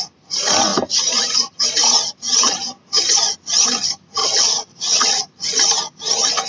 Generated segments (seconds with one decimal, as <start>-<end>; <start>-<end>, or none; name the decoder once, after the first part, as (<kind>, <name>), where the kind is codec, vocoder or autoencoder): 4.2-5.2 (vocoder, WaveNeXt)